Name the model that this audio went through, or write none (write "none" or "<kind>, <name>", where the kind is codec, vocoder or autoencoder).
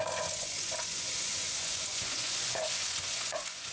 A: vocoder, Vocos